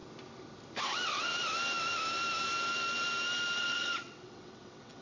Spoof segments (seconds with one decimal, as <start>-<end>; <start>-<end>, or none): 0.8-1.3; 3.6-5.0